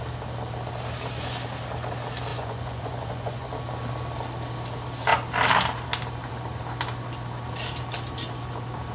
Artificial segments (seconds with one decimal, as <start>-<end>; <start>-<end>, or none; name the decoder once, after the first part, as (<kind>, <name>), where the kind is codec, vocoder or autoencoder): 2.3-3.5 (vocoder, Vocos)